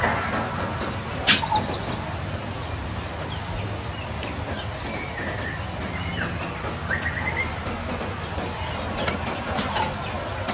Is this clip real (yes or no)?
yes